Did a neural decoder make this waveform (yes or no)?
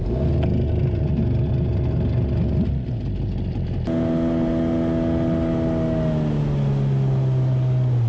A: no